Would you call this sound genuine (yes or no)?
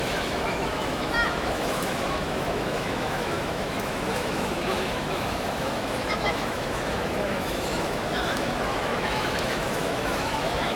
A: no